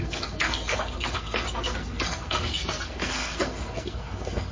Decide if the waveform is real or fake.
fake